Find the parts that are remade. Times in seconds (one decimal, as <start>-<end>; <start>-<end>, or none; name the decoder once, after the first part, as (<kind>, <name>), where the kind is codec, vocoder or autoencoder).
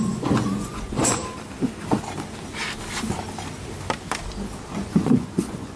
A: 0.0-1.2 (vocoder, Vocos); 4.7-5.8